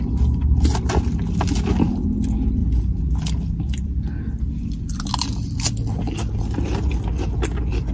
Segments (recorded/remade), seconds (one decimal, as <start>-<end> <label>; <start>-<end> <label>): 0.0-7.9 recorded